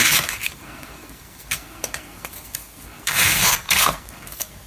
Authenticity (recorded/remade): remade